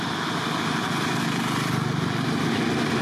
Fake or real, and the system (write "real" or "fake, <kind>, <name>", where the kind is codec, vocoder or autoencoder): real